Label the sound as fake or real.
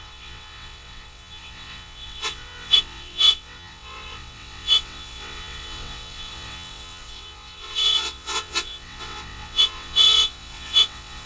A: fake